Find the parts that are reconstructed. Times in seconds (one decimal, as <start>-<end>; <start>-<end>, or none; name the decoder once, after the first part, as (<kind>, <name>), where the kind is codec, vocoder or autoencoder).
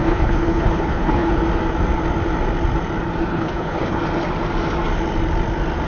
0.0-1.3 (codec, HILCodec); 3.3-4.0